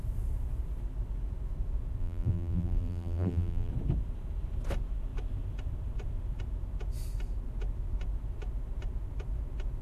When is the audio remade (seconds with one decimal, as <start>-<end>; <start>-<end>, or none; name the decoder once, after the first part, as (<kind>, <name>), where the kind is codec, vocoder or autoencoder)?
2.0-3.7 (vocoder, BigVGAN v2)